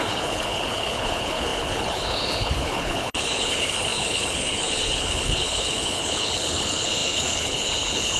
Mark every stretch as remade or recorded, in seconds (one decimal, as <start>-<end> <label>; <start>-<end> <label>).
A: 0.0-8.2 remade